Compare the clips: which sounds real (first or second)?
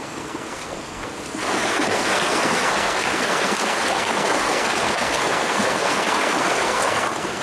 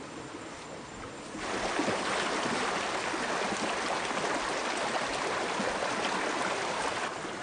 second